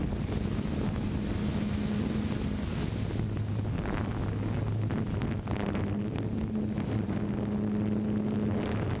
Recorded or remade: recorded